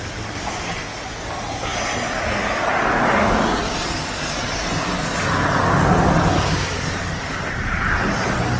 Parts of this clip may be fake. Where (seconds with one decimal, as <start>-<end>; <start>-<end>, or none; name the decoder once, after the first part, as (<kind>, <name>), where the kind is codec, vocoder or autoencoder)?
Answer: none